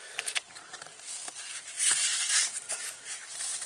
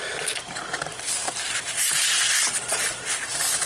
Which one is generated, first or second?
first